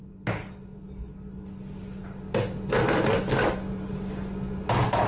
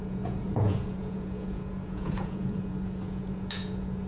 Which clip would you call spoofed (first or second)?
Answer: second